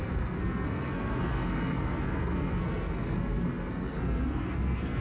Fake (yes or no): yes